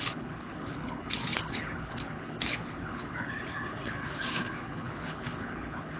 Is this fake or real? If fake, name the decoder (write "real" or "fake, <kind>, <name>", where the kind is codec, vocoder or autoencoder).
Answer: fake, codec, HILCodec